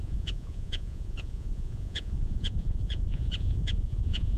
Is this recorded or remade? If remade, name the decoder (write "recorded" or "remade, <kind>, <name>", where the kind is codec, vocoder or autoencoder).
remade, vocoder, Vocos